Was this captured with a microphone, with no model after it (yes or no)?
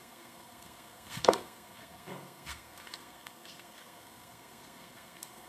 no